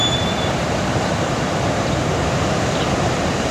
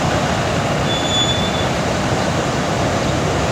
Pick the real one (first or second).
second